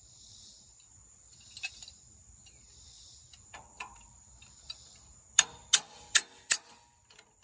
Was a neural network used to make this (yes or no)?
no